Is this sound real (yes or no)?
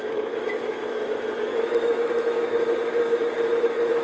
no